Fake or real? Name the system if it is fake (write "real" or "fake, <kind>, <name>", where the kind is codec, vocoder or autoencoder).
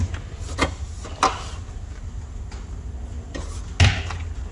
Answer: real